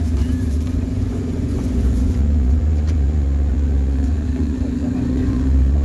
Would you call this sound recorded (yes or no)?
no